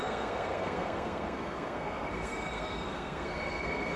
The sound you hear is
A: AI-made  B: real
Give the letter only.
A